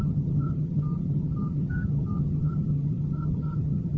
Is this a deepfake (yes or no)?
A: yes